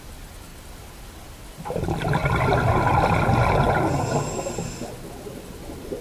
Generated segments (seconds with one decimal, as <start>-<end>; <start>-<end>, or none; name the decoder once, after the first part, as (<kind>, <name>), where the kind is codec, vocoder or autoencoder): none

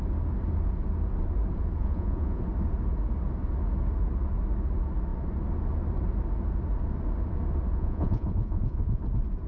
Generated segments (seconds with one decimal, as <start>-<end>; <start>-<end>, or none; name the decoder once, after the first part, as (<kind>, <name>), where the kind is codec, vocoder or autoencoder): 1.8-2.4 (vocoder, Vocos); 7.7-9.0

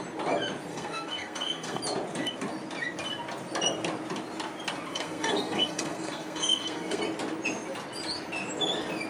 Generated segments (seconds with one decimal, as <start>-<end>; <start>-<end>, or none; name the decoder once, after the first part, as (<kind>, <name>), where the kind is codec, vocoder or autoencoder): 0.7-1.8 (codec, SNAC); 4.9-7.0

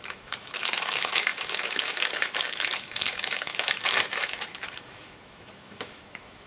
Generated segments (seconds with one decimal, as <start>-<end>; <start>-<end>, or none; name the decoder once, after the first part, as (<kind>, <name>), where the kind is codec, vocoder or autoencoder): 0.0-6.5 (autoencoder, DAC-VAE)

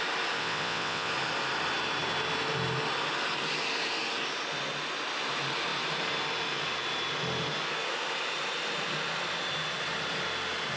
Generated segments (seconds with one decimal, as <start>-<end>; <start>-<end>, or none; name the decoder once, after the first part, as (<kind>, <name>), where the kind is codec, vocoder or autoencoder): 0.4-1.1 (vocoder, WaveNeXt)

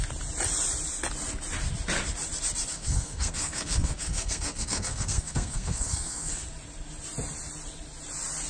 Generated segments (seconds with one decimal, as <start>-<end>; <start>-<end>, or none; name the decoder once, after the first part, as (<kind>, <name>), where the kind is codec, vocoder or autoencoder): 2.7-6.4 (codec, SNAC)

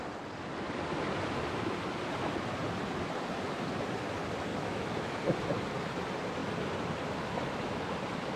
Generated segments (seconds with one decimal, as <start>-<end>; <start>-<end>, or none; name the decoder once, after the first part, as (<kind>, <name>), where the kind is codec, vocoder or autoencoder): 4.5-5.1 (autoencoder, DAC-VAE)

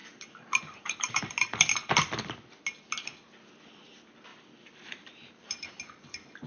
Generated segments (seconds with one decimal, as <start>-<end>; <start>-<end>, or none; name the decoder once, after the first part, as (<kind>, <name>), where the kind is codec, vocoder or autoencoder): 0.0-1.2 (vocoder, BigVGAN v2); 4.3-6.5